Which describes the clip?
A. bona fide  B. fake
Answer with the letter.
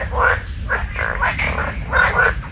A